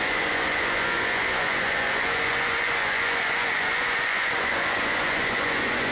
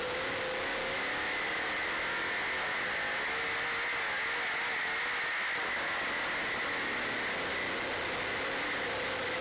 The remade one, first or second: first